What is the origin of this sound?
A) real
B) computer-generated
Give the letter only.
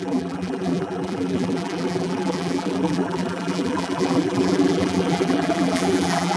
B